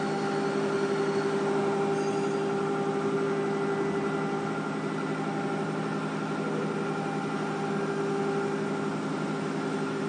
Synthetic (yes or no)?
no